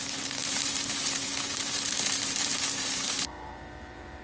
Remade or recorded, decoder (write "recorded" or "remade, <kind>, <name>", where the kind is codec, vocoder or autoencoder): remade, vocoder, BigVGAN v2